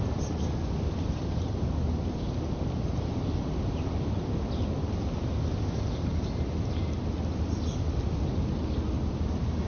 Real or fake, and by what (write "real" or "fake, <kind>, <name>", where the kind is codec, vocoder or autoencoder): real